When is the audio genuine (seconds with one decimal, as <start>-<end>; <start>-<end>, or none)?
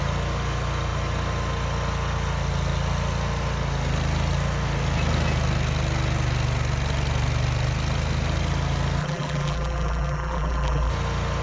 0.0-9.0; 10.9-11.4